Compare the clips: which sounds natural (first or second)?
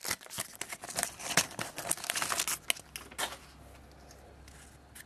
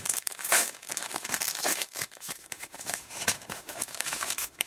first